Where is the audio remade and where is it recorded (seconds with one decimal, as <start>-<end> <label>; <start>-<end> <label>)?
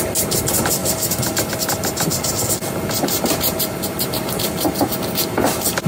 0.0-0.8 recorded; 0.8-4.3 remade; 4.3-5.9 recorded